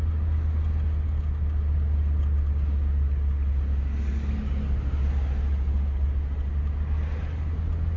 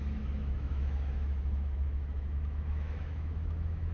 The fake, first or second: second